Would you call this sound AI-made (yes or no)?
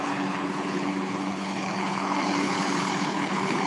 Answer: yes